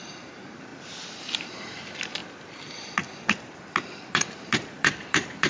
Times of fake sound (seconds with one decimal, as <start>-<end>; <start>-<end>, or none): 0.0-0.7; 1.4-2.2; 4.0-5.5